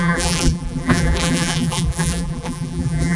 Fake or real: fake